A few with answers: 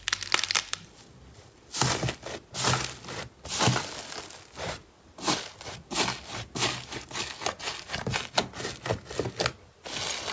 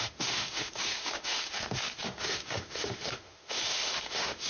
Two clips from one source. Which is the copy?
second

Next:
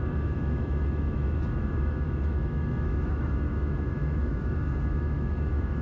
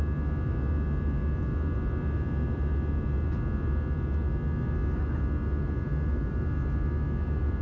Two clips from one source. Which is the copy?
first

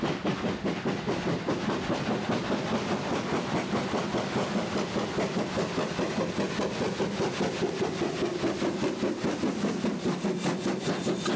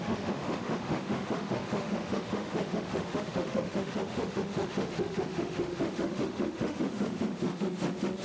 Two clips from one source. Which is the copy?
second